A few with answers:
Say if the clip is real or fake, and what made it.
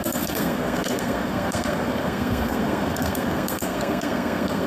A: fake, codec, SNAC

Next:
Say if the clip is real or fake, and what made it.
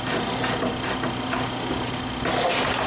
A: real